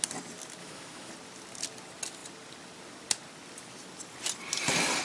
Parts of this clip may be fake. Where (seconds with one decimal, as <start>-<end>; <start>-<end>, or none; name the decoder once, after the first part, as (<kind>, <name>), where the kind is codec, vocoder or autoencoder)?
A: 0.6-1.1 (autoencoder, DAC-VAE)